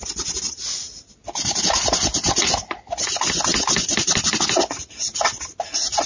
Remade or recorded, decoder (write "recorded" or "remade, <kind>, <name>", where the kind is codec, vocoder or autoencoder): recorded